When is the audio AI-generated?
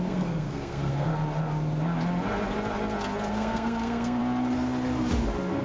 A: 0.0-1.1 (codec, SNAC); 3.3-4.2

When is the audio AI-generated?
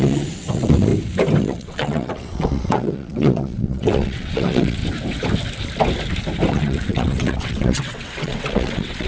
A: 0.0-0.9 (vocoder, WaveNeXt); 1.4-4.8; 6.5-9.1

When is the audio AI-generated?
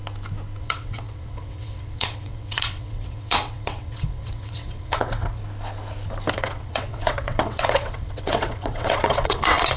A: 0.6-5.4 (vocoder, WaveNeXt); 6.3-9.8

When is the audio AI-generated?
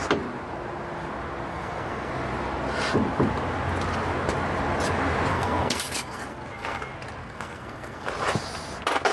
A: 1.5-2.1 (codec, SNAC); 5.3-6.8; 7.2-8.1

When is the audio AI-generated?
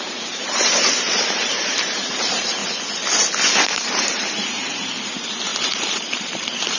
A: 0.0-2.6 (vocoder, BigVGAN v2); 3.7-6.8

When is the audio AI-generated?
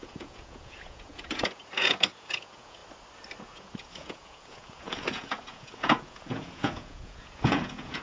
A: 0.0-2.8 (vocoder, Vocos); 3.4-8.0